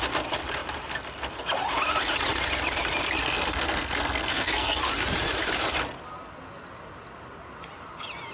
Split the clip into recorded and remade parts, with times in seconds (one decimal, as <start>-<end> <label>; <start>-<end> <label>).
0.0-3.2 recorded; 3.2-4.8 remade; 4.8-8.3 recorded